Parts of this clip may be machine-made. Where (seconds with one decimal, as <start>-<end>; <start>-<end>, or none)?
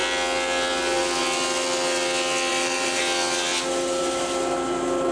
2.5-3.0